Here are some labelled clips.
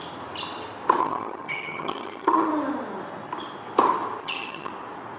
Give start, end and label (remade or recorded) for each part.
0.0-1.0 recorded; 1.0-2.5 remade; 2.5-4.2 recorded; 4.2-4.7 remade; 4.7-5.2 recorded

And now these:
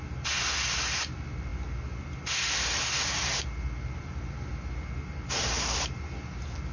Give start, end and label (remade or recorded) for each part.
0.0-6.7 recorded

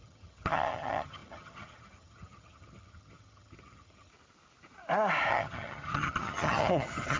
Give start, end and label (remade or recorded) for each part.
0.0-4.1 remade; 4.1-5.3 recorded; 5.3-7.2 remade

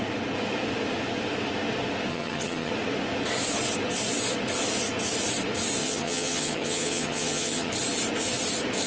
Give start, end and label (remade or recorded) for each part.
0.0-2.1 recorded; 2.1-2.7 remade; 2.7-5.8 recorded; 5.8-7.7 remade; 7.7-8.9 recorded